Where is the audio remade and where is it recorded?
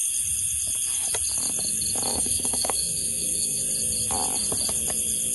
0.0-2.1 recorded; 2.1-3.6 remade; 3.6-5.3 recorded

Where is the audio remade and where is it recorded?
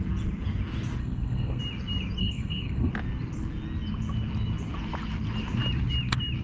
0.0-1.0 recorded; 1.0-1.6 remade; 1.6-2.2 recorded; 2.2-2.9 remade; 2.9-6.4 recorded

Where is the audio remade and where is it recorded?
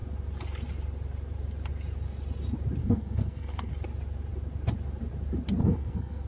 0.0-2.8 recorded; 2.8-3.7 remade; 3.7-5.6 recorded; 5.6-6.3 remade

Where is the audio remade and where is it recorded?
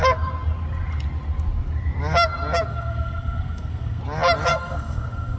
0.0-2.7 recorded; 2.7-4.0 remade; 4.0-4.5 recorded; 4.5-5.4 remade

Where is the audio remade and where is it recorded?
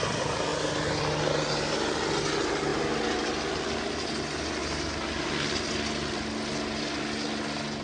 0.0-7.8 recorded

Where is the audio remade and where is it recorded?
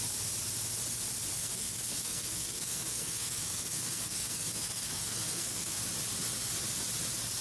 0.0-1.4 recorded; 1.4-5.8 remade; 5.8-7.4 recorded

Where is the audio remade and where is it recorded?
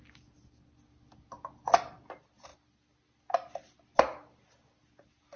0.0-5.4 recorded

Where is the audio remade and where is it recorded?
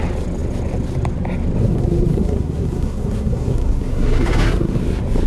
0.0-1.6 recorded; 1.6-4.8 remade; 4.8-5.3 recorded